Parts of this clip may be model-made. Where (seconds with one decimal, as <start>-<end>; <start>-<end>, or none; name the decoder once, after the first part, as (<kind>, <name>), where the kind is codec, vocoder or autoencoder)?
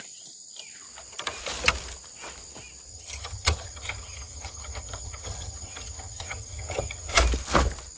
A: 2.9-7.2 (vocoder, HiFi-GAN)